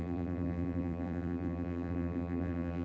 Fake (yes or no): yes